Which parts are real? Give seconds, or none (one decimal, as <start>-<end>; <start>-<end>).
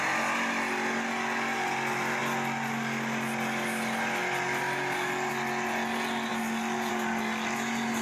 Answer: 0.0-8.0